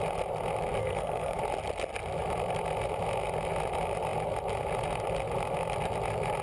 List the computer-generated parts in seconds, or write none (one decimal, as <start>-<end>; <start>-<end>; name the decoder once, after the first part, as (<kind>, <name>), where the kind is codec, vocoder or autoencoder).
0.8-1.4 (codec, SNAC)